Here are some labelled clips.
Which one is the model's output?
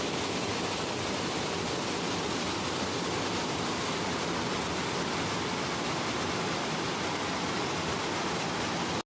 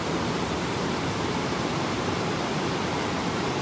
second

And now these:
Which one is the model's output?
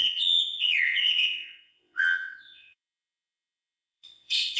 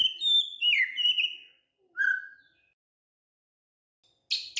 first